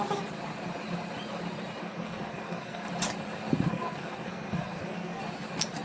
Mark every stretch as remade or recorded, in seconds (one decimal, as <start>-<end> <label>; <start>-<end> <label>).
0.0-1.8 recorded; 1.8-2.9 remade; 2.9-3.7 recorded; 3.7-5.2 remade; 5.2-5.8 recorded